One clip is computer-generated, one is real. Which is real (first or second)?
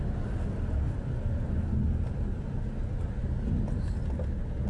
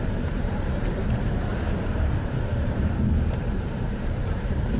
first